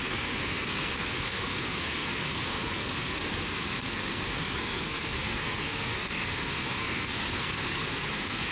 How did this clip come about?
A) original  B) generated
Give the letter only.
B